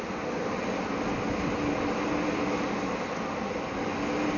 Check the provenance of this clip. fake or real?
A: real